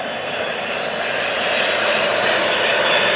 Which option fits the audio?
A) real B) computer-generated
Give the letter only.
A